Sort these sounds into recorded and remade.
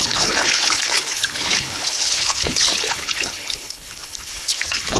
remade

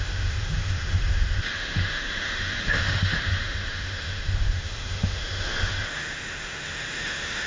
remade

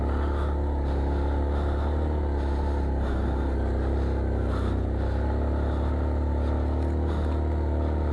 recorded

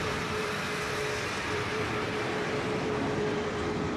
remade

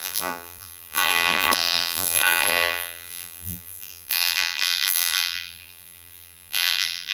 remade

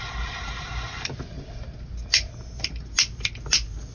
recorded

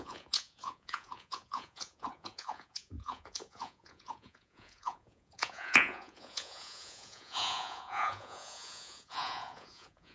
remade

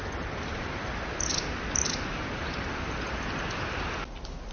recorded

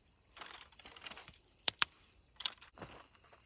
remade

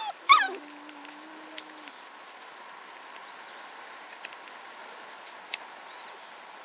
recorded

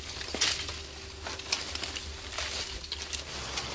recorded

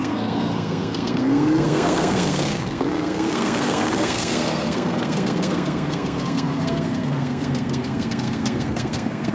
remade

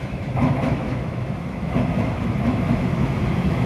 remade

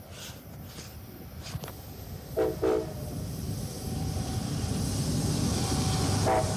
recorded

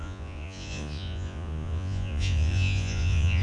remade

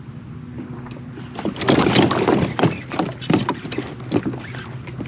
recorded